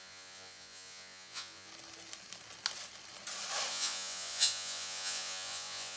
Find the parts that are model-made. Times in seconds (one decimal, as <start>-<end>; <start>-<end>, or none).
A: 0.0-1.7; 3.7-6.0